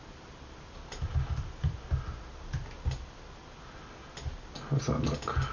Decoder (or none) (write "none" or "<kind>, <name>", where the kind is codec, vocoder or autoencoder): none